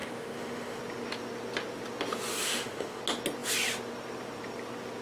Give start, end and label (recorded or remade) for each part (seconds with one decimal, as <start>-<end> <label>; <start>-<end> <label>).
0.0-0.8 remade; 0.8-2.3 recorded; 2.3-3.0 remade; 3.0-5.0 recorded